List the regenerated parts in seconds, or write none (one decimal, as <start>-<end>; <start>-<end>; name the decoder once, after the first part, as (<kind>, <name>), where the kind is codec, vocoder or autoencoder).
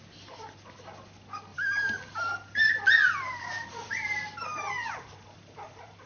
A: 1.5-3.9 (vocoder, BigVGAN v2); 4.8-6.1